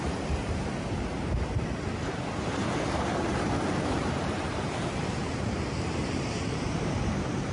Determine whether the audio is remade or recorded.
remade